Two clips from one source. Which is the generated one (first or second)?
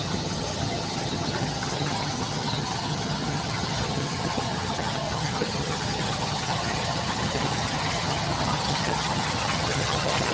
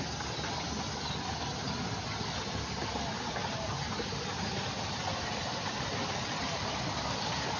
first